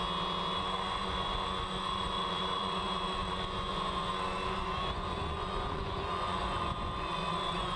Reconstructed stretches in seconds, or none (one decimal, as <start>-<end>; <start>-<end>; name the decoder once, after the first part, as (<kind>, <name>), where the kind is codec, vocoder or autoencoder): 0.6-7.8 (vocoder, Vocos)